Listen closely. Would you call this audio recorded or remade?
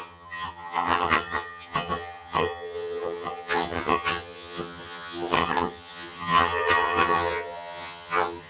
remade